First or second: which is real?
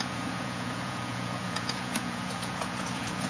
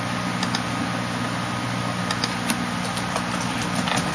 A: second